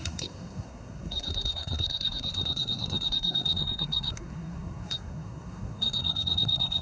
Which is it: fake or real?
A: fake